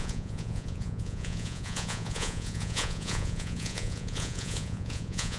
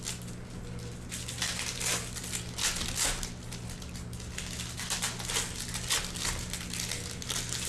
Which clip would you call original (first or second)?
second